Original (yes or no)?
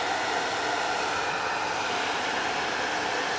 yes